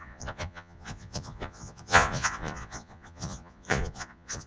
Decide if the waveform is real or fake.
fake